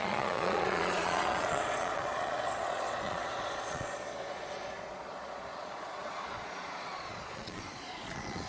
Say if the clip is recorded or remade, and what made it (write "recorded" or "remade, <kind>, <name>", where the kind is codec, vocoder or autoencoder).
remade, vocoder, Vocos